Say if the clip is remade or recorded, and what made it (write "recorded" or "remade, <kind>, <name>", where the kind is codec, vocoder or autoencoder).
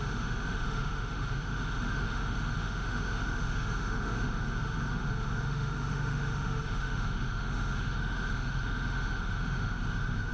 remade, autoencoder, DAC-VAE